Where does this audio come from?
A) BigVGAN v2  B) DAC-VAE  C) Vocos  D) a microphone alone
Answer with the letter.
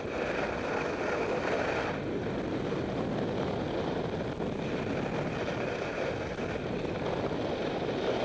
D